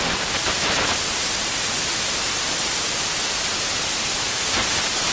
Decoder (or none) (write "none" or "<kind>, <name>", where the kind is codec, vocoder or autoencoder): none